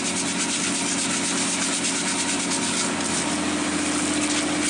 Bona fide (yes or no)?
yes